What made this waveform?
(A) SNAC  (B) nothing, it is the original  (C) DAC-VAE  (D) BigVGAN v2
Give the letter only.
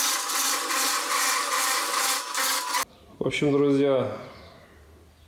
B